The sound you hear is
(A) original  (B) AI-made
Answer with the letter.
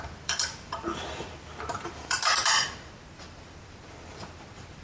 B